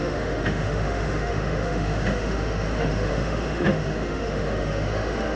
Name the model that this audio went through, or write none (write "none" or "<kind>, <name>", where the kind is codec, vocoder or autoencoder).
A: autoencoder, DAC-VAE